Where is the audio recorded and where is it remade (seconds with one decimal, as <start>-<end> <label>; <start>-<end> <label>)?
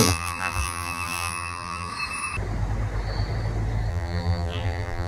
0.0-1.9 remade; 1.9-3.9 recorded; 3.9-5.1 remade